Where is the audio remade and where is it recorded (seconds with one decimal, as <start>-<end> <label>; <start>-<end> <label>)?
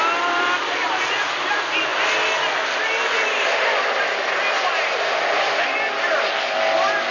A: 0.0-7.1 recorded